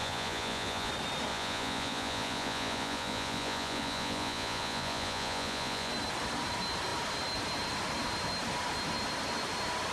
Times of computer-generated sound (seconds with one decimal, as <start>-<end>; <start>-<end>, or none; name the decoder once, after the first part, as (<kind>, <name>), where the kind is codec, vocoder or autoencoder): 0.0-0.9 (vocoder, Vocos); 1.3-5.9